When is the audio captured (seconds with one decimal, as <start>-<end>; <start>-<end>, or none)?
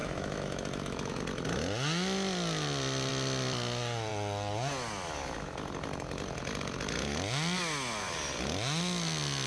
1.2-9.5